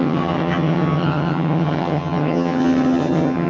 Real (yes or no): no